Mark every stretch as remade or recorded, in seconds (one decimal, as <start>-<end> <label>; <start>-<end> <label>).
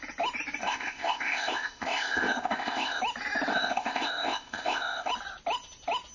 0.0-0.6 recorded; 0.6-3.0 remade; 3.0-3.5 recorded; 3.5-5.1 remade; 5.1-6.1 recorded